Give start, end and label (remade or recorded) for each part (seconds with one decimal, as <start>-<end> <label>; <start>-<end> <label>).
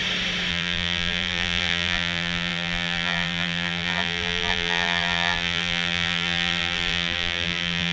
0.0-0.5 recorded; 0.5-7.9 remade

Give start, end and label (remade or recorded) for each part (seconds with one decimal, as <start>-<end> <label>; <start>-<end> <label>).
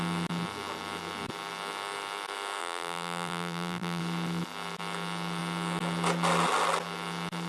0.0-2.6 recorded; 2.6-4.0 remade; 4.0-7.5 recorded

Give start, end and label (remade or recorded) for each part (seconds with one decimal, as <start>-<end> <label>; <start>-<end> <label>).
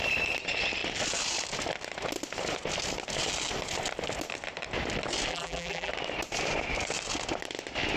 0.0-5.3 recorded; 5.3-5.9 remade; 5.9-8.0 recorded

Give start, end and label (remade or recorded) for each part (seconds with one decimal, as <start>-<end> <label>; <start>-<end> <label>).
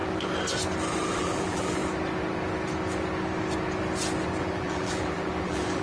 0.0-1.1 recorded; 1.1-1.8 remade; 1.8-4.4 recorded; 4.4-5.8 remade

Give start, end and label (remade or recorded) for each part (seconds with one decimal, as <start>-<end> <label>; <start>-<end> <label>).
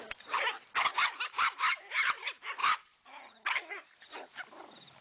0.0-5.0 recorded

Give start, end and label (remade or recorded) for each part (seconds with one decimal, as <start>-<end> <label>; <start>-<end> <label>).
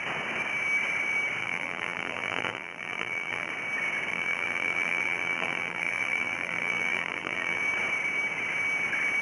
0.0-1.4 recorded; 1.4-3.5 remade; 3.5-4.1 recorded; 4.1-7.6 remade; 7.6-9.2 recorded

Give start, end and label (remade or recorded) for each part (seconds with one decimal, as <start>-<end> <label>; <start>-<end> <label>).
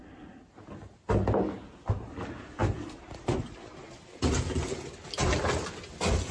0.0-6.3 recorded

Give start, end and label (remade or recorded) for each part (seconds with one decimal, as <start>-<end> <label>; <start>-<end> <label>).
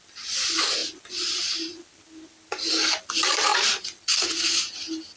0.0-5.2 recorded